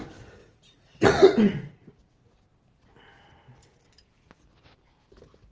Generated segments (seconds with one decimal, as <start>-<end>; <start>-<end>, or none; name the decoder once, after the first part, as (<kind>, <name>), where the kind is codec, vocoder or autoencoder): 0.4-1.9 (vocoder, Vocos)